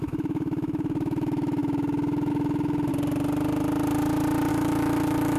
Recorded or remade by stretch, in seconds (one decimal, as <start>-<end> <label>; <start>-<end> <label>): 0.0-2.9 remade; 2.9-4.5 recorded; 4.5-5.4 remade